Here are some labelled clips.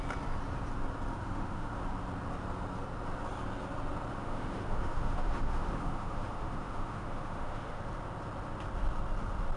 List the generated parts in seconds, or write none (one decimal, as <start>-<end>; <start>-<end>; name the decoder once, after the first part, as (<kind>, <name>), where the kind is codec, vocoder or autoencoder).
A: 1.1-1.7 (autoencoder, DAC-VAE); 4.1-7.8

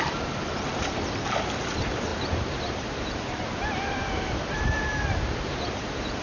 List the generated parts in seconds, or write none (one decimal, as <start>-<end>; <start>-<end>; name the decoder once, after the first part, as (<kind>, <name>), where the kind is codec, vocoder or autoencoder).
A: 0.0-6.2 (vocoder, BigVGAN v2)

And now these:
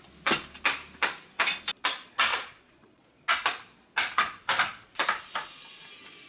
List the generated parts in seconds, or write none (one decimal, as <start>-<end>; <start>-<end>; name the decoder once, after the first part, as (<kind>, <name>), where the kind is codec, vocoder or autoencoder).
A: 2.3-3.2 (vocoder, Vocos)

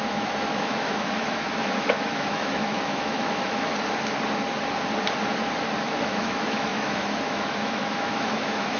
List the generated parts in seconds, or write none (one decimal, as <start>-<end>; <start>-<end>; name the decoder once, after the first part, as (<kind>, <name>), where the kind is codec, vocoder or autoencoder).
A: 0.0-3.7 (autoencoder, DAC-VAE); 5.8-8.8

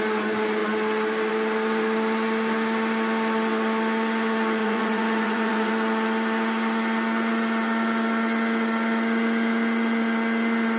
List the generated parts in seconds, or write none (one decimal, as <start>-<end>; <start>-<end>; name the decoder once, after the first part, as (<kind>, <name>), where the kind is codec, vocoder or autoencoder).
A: 4.6-5.7 (vocoder, Vocos)

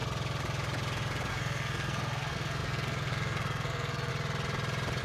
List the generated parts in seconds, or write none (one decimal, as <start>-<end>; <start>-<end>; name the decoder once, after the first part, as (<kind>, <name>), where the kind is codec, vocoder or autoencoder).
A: 1.3-4.1 (codec, SNAC)

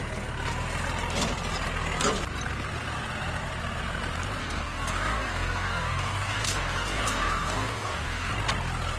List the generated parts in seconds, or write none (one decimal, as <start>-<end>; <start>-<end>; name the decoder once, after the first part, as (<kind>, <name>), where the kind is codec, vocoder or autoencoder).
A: 4.4-8.3 (codec, DAC)